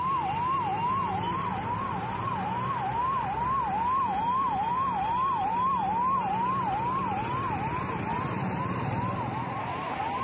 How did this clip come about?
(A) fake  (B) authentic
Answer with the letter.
B